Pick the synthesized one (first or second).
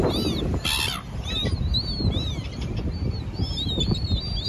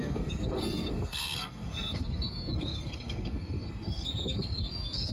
second